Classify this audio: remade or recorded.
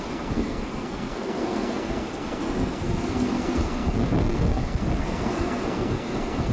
remade